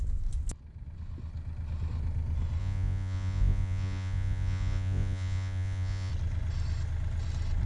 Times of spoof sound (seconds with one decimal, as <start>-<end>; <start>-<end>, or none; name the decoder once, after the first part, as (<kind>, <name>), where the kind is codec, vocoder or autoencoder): 2.6-6.1 (vocoder, Vocos)